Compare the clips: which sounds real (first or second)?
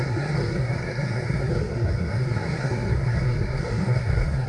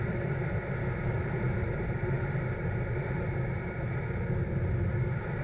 second